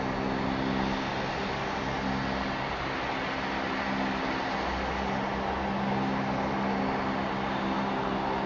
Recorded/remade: recorded